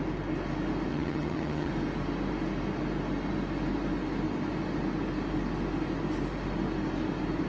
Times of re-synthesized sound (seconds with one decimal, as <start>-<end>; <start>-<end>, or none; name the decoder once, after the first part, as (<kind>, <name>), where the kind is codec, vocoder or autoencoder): 0.9-1.7 (vocoder, HiFi-GAN)